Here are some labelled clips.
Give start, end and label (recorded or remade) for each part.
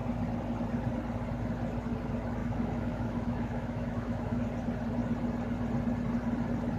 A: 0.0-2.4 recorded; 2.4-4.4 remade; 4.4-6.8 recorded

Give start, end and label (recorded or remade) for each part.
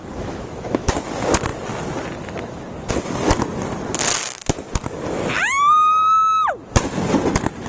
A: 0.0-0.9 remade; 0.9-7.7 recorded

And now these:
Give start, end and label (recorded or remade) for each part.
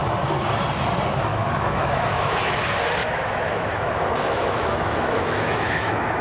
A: 0.0-1.3 recorded; 1.3-2.6 remade; 2.6-3.0 recorded; 3.0-6.2 remade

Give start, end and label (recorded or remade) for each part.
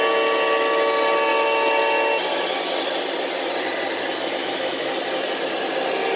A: 0.0-4.4 recorded; 4.4-4.9 remade; 4.9-6.2 recorded